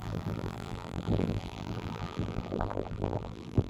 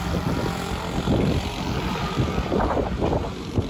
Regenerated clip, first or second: first